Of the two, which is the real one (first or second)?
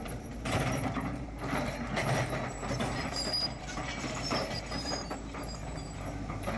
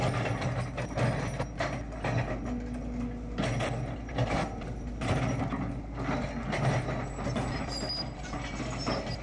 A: second